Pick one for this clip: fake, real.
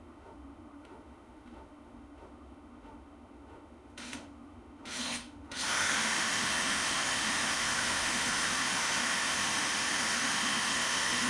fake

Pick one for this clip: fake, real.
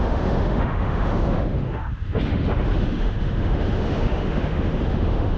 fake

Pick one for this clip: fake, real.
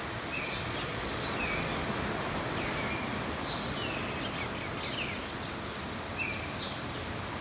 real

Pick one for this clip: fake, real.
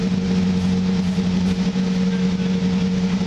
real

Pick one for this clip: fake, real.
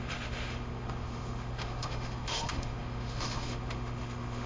fake